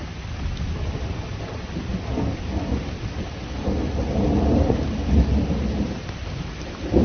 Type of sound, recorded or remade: recorded